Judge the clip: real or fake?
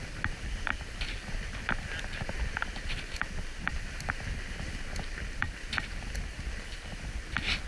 real